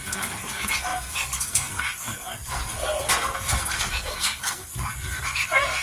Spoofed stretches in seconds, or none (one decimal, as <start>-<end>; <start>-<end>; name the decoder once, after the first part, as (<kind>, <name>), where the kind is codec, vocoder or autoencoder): 0.0-5.8 (codec, SNAC)